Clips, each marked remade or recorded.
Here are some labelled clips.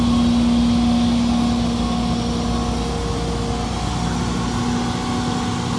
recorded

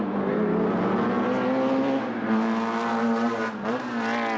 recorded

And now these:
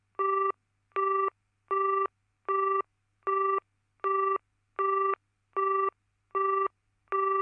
recorded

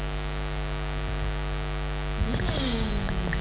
recorded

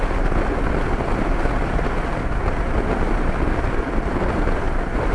recorded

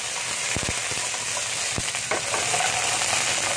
recorded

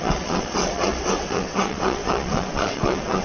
remade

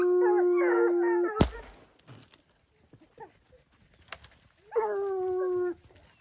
recorded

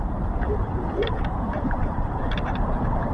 remade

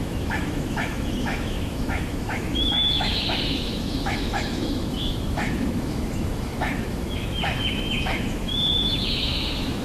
remade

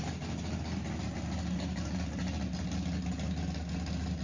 recorded